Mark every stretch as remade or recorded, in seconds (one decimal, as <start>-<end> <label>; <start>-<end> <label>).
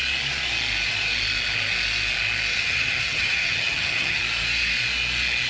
0.0-2.5 recorded; 2.5-4.2 remade; 4.2-5.5 recorded